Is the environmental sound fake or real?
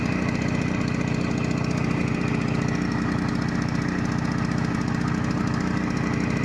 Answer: real